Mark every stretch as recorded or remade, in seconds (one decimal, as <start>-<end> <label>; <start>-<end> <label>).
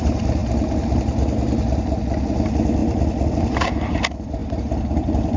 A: 0.0-0.4 remade; 0.4-2.2 recorded; 2.2-2.8 remade; 2.8-3.3 recorded; 3.3-5.4 remade